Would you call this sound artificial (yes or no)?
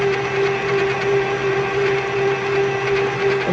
no